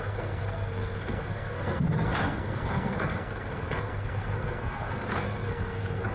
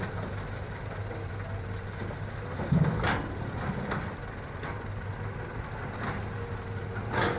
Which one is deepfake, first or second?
first